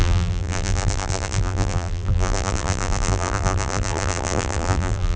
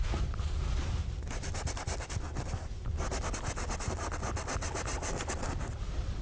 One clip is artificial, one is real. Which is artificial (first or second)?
first